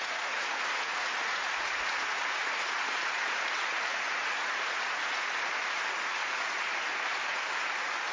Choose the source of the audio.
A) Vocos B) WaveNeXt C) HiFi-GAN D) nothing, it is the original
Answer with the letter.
A